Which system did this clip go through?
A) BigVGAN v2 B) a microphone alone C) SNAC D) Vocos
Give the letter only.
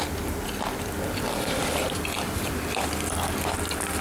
B